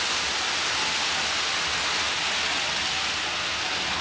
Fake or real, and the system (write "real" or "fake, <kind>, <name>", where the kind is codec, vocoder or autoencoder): real